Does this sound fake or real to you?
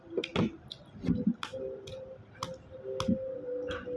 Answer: real